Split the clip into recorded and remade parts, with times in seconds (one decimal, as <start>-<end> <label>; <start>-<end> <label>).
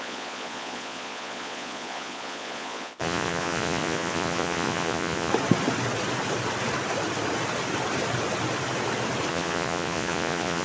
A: 0.0-5.3 remade; 5.3-9.3 recorded; 9.3-10.6 remade